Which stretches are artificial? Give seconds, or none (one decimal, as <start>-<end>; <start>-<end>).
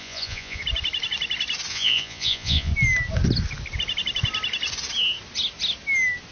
0.0-0.6; 1.7-2.7